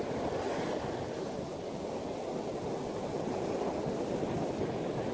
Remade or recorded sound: recorded